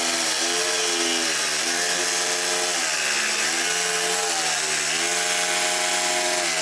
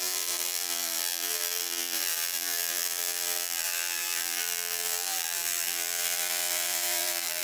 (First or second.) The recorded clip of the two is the first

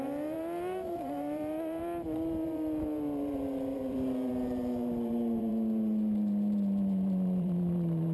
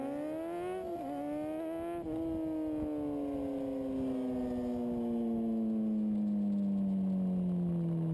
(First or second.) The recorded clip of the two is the second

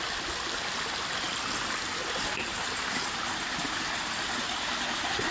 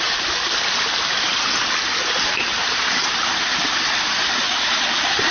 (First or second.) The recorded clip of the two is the first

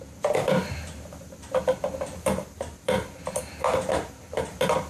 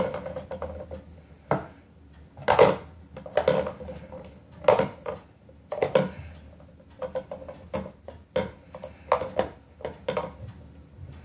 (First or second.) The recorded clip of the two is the second